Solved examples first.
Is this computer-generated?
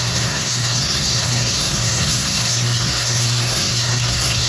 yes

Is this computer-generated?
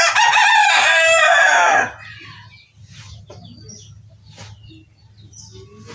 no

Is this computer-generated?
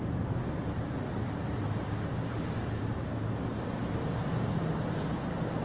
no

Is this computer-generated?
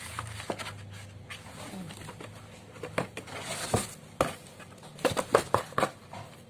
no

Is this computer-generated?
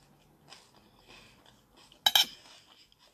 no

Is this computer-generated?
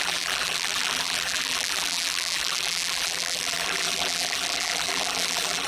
yes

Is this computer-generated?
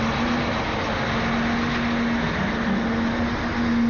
no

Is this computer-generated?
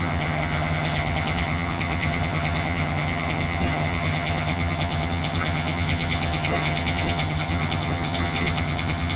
yes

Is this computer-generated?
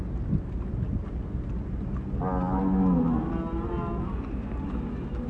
no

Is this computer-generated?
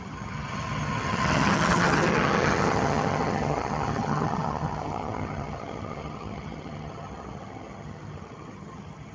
yes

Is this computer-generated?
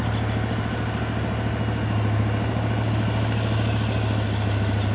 no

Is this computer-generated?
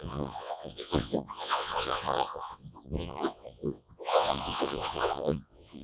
yes